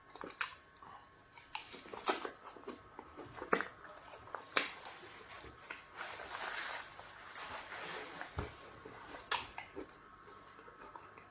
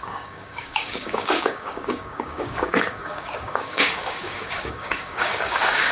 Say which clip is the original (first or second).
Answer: first